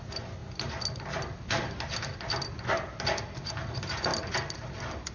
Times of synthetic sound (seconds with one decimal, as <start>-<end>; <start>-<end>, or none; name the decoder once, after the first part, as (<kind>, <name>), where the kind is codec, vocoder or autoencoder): none